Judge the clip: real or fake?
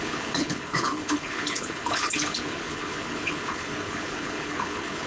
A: fake